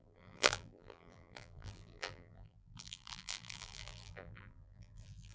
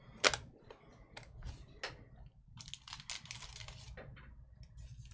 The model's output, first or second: first